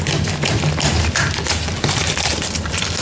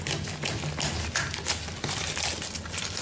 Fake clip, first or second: first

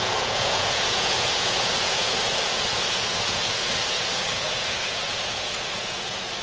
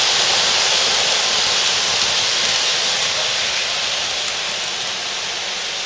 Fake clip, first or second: first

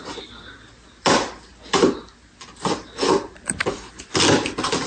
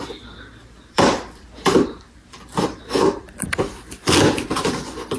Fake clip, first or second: second